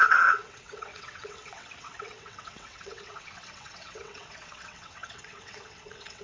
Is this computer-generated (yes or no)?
yes